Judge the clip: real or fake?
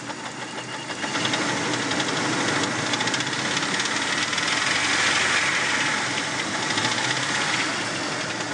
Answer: real